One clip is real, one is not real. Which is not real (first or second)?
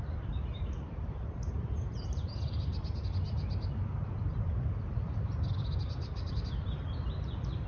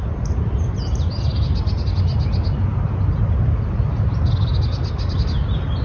first